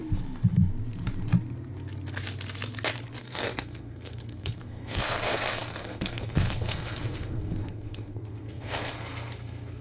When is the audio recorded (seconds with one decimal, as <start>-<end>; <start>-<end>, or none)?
0.0-3.2